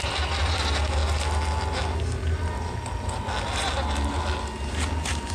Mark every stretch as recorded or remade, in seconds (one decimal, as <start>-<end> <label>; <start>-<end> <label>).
0.0-5.3 recorded